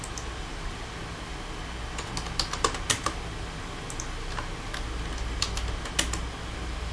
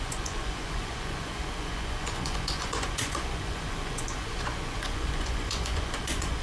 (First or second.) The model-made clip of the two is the second